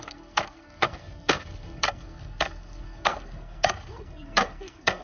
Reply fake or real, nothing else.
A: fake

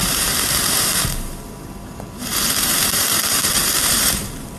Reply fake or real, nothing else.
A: fake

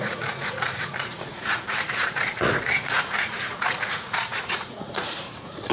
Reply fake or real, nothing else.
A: fake